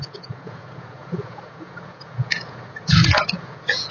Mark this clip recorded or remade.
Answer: remade